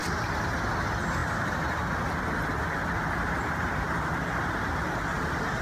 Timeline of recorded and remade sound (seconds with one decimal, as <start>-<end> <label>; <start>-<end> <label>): 0.0-5.6 recorded